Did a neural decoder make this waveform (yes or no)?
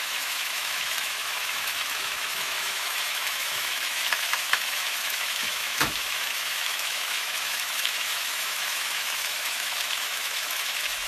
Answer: yes